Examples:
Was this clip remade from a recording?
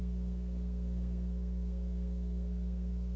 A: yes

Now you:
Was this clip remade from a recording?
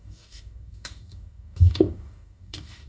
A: yes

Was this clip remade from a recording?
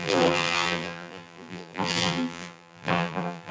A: yes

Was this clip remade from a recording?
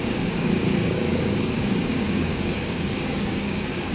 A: yes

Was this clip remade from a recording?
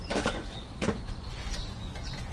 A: yes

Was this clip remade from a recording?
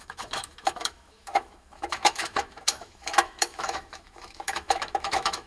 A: yes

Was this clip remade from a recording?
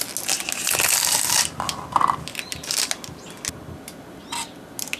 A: no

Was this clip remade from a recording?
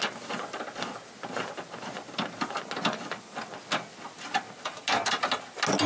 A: no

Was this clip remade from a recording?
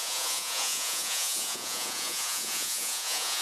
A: yes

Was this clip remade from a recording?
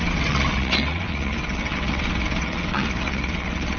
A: yes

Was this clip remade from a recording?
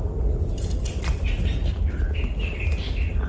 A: no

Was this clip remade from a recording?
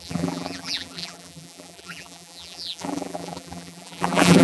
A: yes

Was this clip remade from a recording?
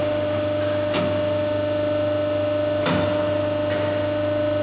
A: no